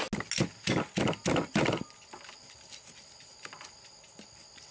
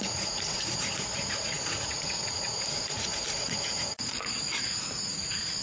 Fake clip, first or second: second